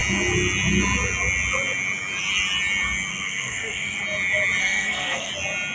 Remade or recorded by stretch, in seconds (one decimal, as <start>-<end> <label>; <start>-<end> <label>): 0.0-3.1 recorded; 3.1-4.0 remade; 4.0-4.6 recorded; 4.6-5.3 remade; 5.3-5.7 recorded